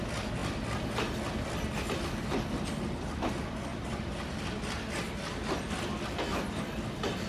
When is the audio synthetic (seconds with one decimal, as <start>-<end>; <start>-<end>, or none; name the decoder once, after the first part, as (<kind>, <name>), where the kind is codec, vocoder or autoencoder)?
3.7-4.5 (vocoder, BigVGAN v2)